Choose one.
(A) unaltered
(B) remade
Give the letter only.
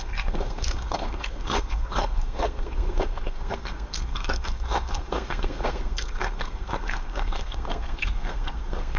B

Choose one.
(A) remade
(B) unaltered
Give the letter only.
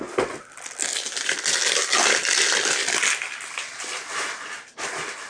B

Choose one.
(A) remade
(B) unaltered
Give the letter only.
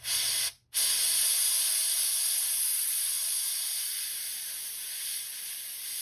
B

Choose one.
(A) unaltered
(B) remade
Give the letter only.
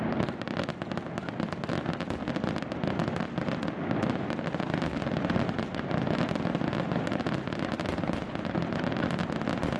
A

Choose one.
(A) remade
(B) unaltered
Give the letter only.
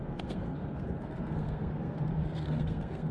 A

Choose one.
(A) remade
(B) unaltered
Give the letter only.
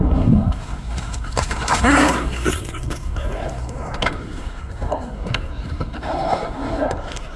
A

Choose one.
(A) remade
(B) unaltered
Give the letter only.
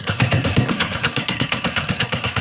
A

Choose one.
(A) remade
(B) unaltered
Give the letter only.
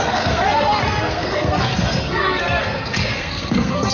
A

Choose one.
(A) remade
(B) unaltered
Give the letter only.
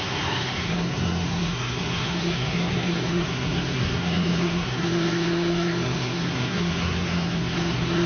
A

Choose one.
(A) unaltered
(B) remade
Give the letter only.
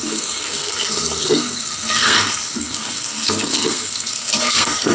B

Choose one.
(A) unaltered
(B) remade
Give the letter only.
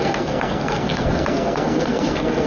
B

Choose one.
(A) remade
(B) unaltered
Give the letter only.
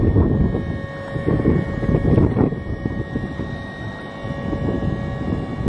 B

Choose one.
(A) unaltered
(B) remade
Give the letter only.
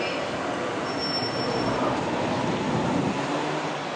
A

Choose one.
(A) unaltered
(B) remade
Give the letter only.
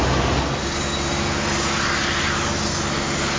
A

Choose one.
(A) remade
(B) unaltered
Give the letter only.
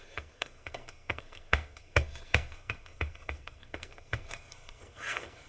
A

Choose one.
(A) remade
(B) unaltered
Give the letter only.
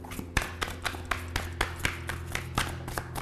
B